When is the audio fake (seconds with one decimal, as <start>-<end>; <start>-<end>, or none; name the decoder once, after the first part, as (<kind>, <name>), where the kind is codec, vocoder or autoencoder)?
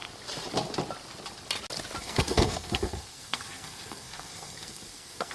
2.0-5.3 (codec, SNAC)